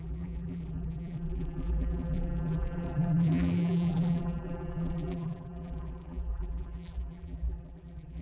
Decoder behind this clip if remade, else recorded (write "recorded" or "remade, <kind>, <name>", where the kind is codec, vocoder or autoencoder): remade, vocoder, BigVGAN v2